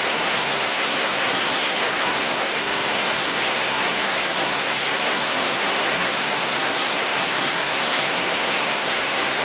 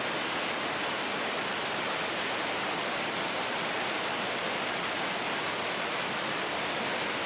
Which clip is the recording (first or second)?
second